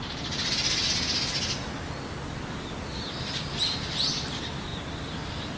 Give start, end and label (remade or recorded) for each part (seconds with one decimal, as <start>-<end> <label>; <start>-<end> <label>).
0.0-5.6 recorded